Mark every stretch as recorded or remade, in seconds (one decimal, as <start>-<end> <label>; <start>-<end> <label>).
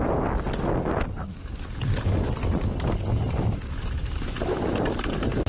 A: 0.0-1.3 recorded; 1.3-2.3 remade; 2.3-5.5 recorded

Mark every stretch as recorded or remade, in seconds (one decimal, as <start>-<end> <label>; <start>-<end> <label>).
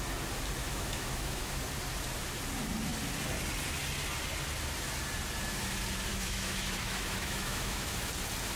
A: 0.0-0.6 recorded; 0.6-1.6 remade; 1.6-6.1 recorded; 6.1-8.1 remade; 8.1-8.6 recorded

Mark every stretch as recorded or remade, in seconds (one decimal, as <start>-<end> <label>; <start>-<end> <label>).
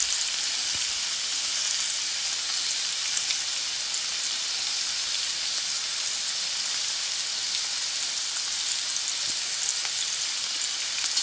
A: 0.0-11.2 recorded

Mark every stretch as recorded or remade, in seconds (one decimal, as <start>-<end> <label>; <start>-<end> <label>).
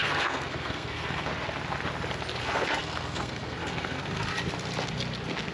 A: 0.0-1.3 remade; 1.3-2.4 recorded; 2.4-4.3 remade; 4.3-5.5 recorded